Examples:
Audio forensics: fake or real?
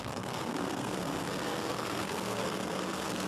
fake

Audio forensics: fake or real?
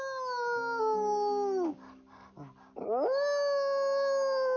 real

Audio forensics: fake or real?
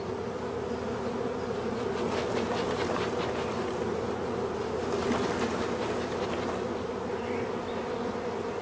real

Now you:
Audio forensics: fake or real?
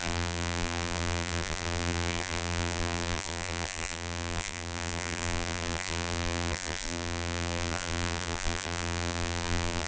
fake